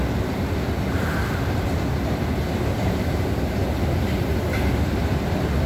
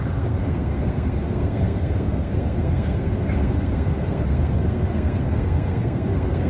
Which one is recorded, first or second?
first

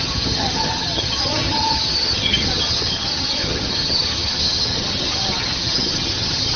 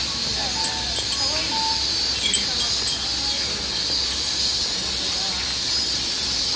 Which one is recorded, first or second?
second